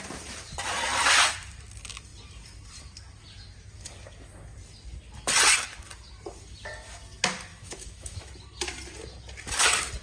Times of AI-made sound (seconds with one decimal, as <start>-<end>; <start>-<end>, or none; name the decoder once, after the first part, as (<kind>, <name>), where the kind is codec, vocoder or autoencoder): 7.5-8.3 (autoencoder, DAC-VAE)

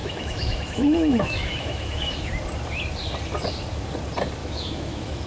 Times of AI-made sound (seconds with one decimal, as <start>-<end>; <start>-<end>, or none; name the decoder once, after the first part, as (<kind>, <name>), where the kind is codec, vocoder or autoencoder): 0.0-2.3 (autoencoder, DAC-VAE); 4.4-5.3